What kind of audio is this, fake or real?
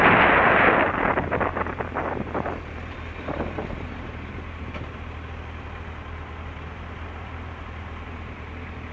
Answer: real